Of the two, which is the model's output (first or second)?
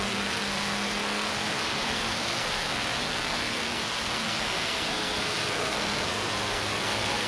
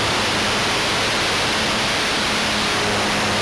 first